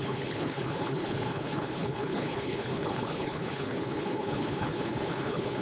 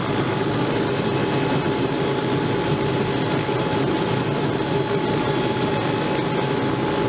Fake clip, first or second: first